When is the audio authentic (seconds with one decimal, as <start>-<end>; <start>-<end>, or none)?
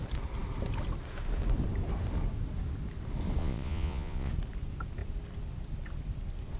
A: 0.0-3.4; 4.3-6.6